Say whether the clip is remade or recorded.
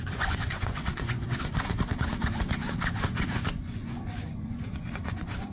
remade